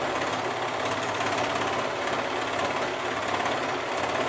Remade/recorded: recorded